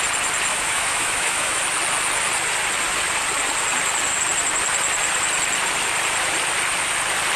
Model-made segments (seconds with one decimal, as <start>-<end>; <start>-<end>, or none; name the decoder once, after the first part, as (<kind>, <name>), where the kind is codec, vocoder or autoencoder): 0.5-1.6 (autoencoder, DAC-VAE)